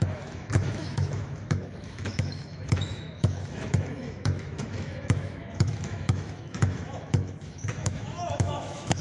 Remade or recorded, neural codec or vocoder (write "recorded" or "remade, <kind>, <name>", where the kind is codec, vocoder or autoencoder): remade, autoencoder, DAC-VAE